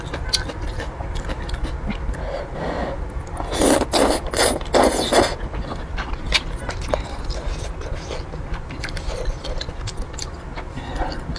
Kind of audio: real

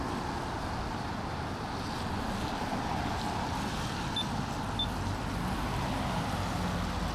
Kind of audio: real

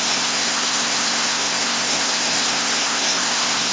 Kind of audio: fake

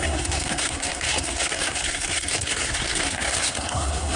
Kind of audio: fake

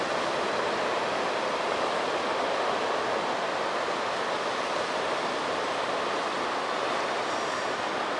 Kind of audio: real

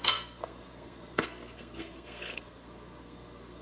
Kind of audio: fake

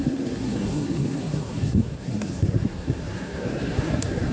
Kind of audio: fake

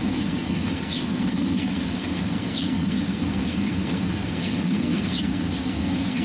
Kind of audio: fake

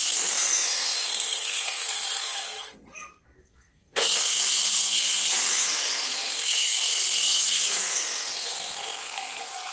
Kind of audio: fake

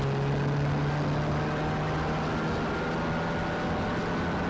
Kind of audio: real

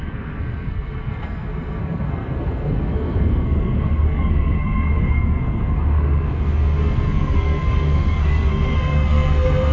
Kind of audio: fake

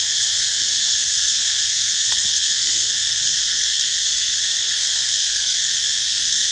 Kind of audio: fake